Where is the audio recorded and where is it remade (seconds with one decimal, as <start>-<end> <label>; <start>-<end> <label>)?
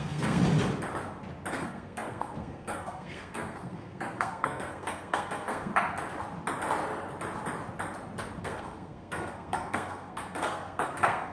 0.0-0.4 remade; 0.4-1.5 recorded; 1.5-5.7 remade; 5.7-8.4 recorded; 8.4-11.3 remade